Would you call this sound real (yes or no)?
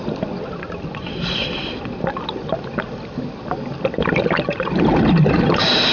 yes